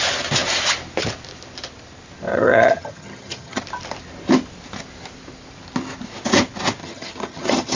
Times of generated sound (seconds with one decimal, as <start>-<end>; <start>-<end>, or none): 2.3-3.6; 6.8-7.8